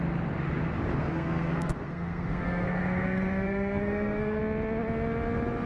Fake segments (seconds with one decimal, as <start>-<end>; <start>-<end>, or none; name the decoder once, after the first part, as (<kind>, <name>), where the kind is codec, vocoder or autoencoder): 1.0-4.4 (codec, SNAC)